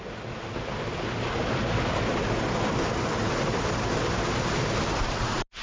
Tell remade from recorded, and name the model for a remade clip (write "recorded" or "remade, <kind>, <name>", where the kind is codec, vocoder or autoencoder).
recorded